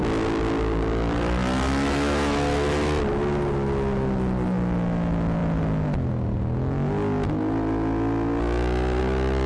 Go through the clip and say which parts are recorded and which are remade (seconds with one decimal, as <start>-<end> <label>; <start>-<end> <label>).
0.0-9.5 recorded